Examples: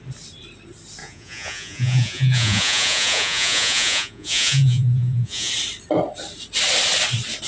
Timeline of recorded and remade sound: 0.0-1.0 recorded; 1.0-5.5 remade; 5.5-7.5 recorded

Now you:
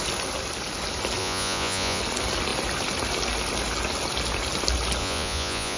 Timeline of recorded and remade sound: 0.0-1.2 recorded; 1.2-2.0 remade; 2.0-5.0 recorded; 5.0-5.8 remade

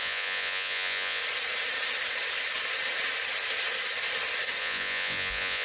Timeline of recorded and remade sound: 0.0-1.2 remade; 1.2-4.6 recorded; 4.6-5.6 remade